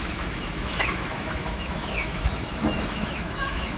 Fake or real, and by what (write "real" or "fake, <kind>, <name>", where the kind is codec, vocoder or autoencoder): fake, autoencoder, DAC-VAE